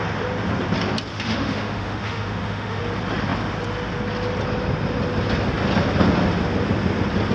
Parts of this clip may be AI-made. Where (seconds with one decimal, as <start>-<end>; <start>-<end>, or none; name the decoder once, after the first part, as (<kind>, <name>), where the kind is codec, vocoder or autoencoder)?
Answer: 1.1-2.8 (autoencoder, DAC-VAE)